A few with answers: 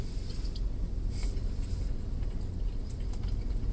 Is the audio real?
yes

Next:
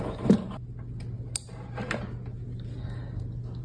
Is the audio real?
yes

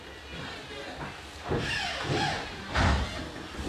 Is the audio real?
yes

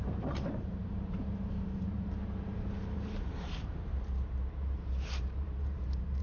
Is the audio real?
no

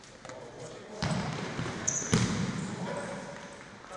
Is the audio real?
yes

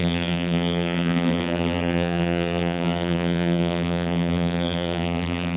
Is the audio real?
no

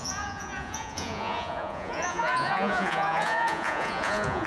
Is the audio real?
no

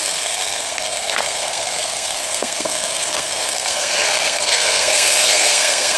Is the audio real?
no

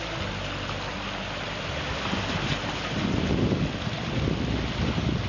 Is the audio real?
yes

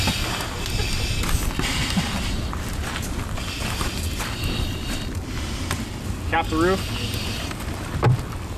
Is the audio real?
yes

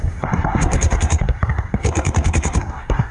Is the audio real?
no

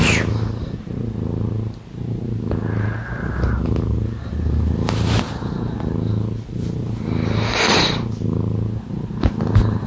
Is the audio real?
yes